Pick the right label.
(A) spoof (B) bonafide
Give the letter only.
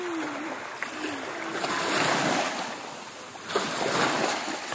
B